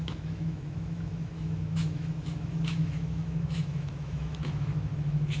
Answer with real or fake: fake